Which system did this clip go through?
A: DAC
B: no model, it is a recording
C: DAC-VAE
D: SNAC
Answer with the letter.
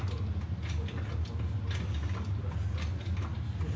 B